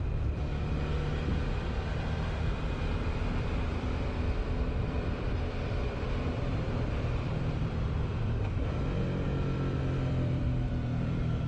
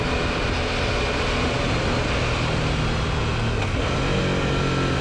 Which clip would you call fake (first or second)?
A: first